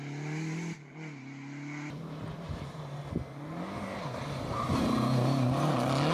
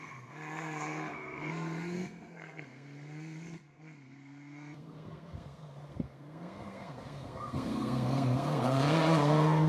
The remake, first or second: second